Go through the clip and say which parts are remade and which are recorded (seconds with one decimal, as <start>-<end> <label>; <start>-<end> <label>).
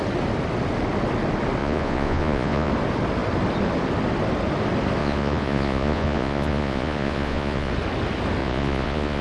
0.0-1.6 recorded; 1.6-2.7 remade; 2.7-5.0 recorded; 5.0-7.7 remade; 7.7-8.4 recorded; 8.4-9.2 remade